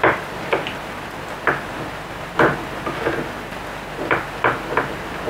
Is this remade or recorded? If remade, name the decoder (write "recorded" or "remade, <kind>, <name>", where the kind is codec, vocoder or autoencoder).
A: recorded